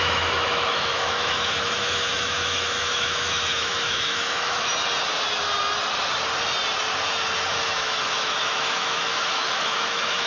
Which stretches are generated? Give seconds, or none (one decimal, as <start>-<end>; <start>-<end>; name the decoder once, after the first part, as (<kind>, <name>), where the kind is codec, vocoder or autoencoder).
0.0-4.7 (autoencoder, DAC-VAE); 7.5-10.3